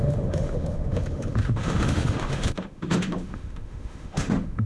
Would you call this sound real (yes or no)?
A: no